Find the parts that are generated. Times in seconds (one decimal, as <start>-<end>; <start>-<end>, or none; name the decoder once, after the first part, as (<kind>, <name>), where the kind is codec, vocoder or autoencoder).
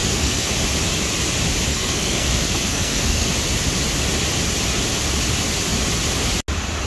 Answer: 0.0-0.5 (codec, SNAC); 1.7-3.3